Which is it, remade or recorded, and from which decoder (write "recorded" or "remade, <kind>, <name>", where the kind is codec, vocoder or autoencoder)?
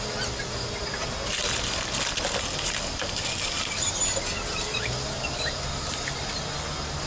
recorded